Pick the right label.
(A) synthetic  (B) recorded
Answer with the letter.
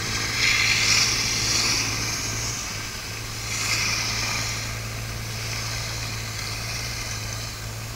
B